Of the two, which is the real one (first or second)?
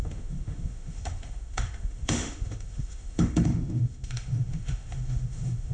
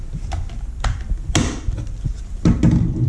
second